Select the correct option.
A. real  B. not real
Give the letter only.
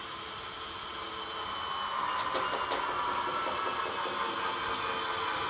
A